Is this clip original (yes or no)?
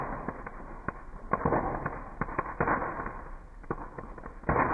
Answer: yes